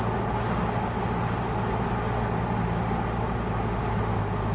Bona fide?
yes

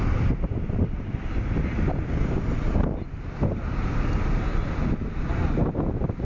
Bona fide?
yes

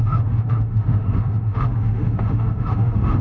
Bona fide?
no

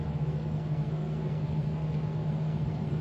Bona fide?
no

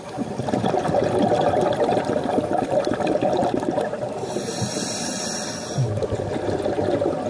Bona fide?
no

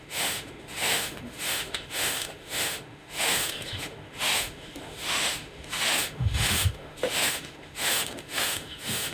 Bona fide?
no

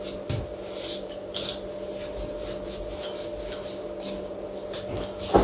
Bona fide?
yes